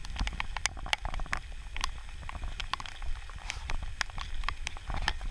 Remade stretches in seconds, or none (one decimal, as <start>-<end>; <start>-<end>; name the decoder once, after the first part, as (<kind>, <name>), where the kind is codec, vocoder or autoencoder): none